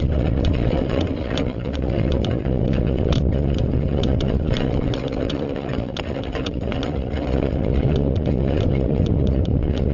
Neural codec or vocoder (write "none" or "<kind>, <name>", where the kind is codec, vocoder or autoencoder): vocoder, WaveNeXt